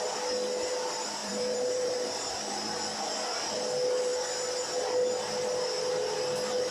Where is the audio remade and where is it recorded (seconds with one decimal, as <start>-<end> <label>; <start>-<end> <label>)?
0.0-1.2 recorded; 1.2-2.8 remade; 2.8-6.7 recorded